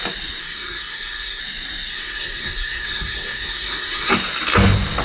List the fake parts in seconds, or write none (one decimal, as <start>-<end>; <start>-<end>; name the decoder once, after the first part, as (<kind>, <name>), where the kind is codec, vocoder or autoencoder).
0.4-1.4 (codec, SNAC); 1.9-4.1